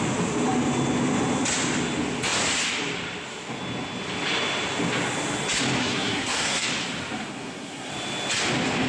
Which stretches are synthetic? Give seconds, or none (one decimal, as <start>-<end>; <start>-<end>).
5.8-6.7; 7.3-7.9